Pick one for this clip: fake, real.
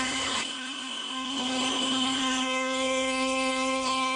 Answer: fake